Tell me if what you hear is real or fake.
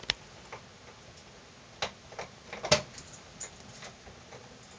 real